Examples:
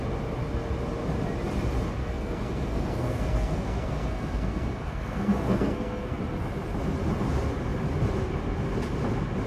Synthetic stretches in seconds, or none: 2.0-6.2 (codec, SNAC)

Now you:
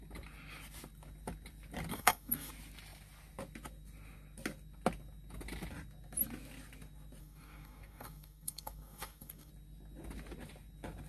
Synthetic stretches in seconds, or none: 1.9-2.5 (codec, DAC); 7.2-9.5

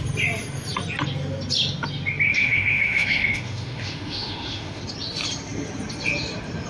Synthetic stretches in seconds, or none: 2.3-4.8 (autoencoder, DAC-VAE)

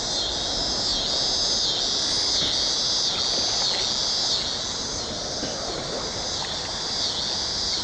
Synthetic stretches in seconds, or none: none

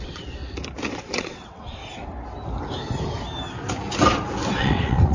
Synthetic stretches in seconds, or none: 0.0-0.4 (vocoder, WaveNeXt); 0.9-1.8; 4.6-5.1

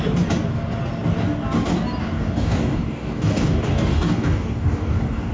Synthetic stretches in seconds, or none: 2.0-5.3 (codec, DAC)

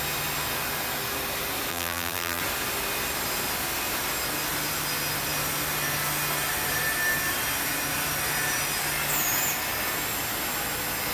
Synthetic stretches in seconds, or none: 1.7-2.4 (vocoder, BigVGAN v2)

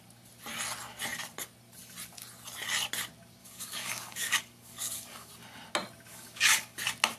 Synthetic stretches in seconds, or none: 3.4-5.3 (codec, DAC); 6.1-6.8